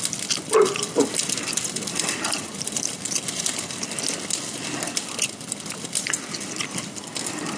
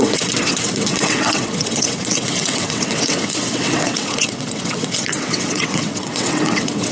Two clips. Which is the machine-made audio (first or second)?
second